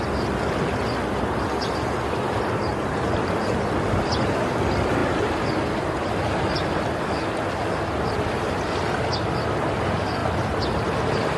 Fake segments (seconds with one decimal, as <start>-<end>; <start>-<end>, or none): none